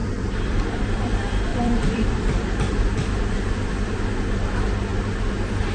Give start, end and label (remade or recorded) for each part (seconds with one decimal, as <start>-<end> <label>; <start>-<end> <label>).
0.0-1.0 remade; 1.0-1.5 recorded; 1.5-2.5 remade; 2.5-5.7 recorded